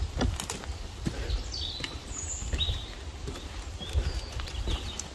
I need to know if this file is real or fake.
real